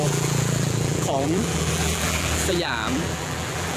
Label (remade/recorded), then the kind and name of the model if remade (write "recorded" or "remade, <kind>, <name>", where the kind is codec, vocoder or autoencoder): remade, vocoder, BigVGAN v2